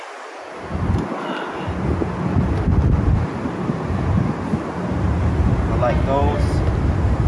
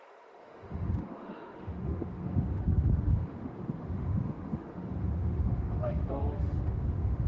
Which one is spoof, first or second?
second